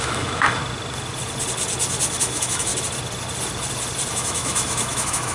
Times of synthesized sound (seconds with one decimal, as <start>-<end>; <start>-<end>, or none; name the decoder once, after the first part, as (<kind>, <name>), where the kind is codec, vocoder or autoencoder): 0.0-0.6 (autoencoder, DAC-VAE); 2.2-2.7; 4.1-5.3